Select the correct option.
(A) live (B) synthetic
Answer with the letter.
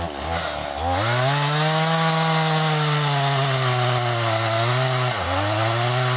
A